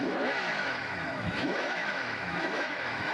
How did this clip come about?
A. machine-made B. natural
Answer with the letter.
A